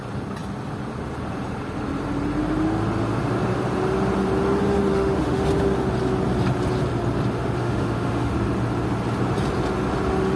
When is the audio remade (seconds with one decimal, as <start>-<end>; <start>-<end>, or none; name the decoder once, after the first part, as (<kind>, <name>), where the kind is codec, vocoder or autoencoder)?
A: 4.9-5.4 (autoencoder, DAC-VAE); 7.6-8.3